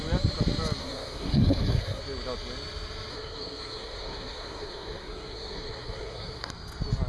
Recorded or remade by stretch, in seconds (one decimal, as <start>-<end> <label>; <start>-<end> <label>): 0.0-0.8 recorded; 0.8-2.0 remade; 2.0-3.1 recorded; 3.1-6.5 remade; 6.5-7.1 recorded